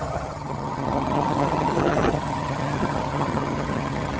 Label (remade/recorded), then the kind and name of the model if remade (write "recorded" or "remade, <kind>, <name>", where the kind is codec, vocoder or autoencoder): remade, vocoder, HiFi-GAN